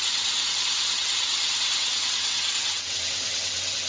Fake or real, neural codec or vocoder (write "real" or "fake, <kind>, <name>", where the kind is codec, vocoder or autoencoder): fake, vocoder, WaveNeXt